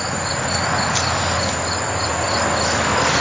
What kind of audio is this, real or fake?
real